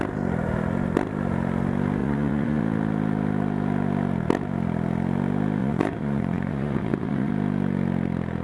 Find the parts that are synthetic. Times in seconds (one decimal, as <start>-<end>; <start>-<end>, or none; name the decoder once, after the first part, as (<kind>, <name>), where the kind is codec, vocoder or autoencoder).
2.0-2.6 (vocoder, Vocos); 5.6-7.3